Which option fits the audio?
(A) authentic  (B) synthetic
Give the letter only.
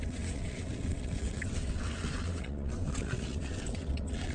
B